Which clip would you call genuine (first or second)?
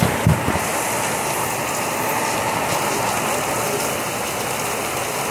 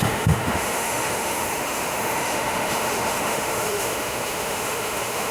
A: first